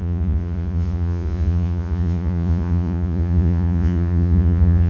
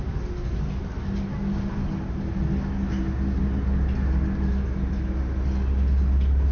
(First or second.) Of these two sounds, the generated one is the first